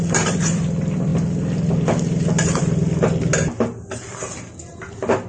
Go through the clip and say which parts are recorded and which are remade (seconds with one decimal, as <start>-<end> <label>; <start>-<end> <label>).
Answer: 0.0-1.1 remade; 1.1-2.6 recorded; 2.6-3.3 remade; 3.3-4.7 recorded; 4.7-5.3 remade